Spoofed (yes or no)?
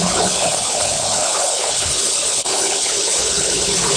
yes